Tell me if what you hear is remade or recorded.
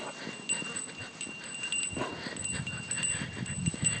recorded